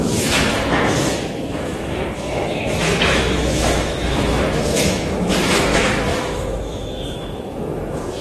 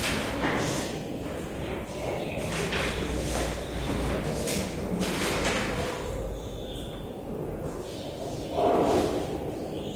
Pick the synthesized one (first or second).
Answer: first